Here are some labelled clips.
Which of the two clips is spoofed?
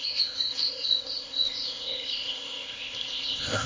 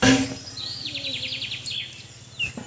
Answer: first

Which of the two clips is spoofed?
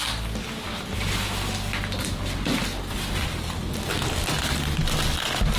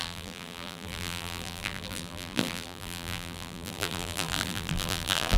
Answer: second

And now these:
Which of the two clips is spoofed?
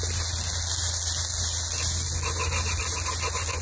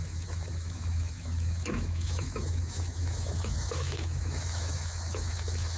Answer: second